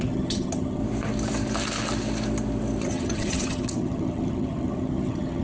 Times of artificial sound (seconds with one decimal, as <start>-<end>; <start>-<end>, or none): 0.0-0.8; 2.8-5.4